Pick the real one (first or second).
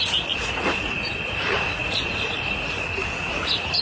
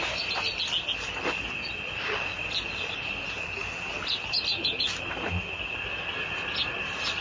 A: second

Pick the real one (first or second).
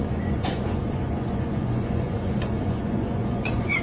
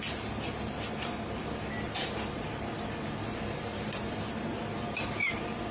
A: second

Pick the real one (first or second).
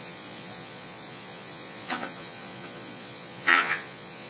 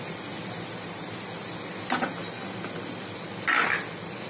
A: second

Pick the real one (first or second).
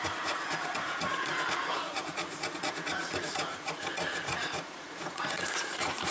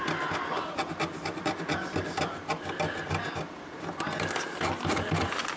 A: second